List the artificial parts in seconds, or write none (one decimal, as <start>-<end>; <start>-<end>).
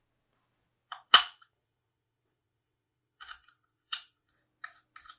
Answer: 1.2-4.3